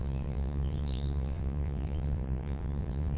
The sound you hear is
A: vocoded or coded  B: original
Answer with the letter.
A